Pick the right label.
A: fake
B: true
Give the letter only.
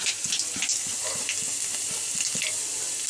B